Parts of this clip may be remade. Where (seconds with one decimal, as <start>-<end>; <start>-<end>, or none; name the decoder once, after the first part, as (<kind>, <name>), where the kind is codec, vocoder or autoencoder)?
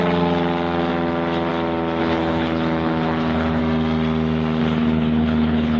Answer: 2.0-3.6 (codec, HILCodec); 4.6-5.8